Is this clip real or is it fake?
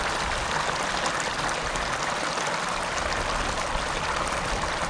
real